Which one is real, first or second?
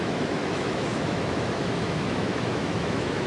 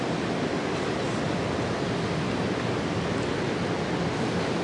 second